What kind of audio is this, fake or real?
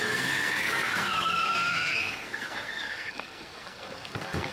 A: fake